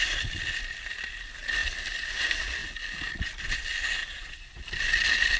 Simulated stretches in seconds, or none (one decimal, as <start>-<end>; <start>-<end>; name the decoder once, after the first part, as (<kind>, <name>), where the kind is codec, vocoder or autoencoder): 4.0-4.6 (vocoder, Vocos)

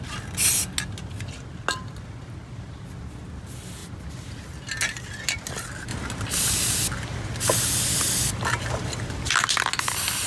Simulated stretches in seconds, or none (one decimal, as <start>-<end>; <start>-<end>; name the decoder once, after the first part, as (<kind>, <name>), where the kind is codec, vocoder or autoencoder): none

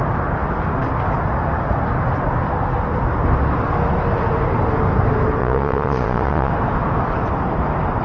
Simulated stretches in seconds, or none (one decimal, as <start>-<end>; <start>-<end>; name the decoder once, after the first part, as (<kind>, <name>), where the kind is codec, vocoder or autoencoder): 5.4-6.5 (vocoder, Vocos)

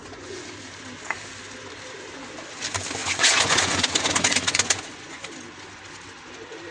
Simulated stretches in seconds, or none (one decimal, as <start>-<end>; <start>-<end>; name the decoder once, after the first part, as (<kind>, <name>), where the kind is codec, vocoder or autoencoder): 0.0-0.5 (vocoder, Vocos); 3.0-5.2

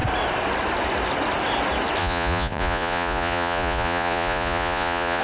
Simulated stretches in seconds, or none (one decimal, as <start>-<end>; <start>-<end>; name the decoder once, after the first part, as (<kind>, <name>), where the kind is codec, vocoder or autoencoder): 2.0-5.2 (vocoder, Vocos)

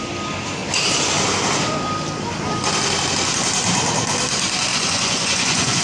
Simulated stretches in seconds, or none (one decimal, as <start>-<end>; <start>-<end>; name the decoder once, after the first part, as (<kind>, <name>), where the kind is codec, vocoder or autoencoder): 4.7-5.8 (vocoder, Vocos)

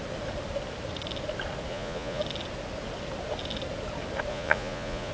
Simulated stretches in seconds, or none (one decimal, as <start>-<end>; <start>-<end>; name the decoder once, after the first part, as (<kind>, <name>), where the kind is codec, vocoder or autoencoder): 1.7-2.2 (vocoder, Vocos); 4.3-5.1